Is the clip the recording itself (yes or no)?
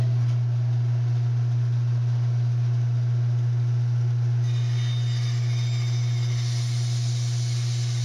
yes